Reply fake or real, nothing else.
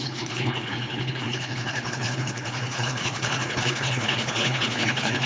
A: fake